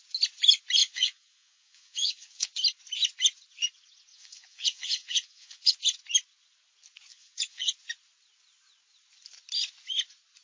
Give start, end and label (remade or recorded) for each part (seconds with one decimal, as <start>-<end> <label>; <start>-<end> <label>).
0.0-0.8 recorded; 0.8-2.5 remade; 2.5-4.1 recorded; 4.1-5.7 remade; 5.7-7.1 recorded; 7.1-7.7 remade; 7.7-10.4 recorded